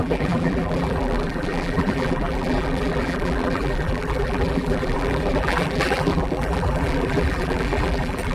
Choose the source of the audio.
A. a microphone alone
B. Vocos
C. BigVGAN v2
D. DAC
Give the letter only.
C